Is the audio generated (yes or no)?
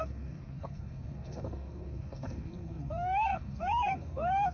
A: yes